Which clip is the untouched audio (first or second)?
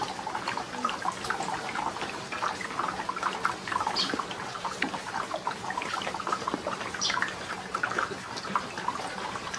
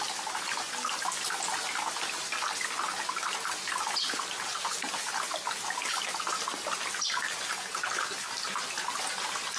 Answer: second